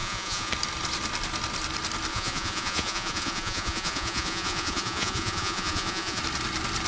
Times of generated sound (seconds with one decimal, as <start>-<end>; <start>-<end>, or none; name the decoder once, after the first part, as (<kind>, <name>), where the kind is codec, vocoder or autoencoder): 0.0-0.5 (vocoder, Vocos); 2.1-6.2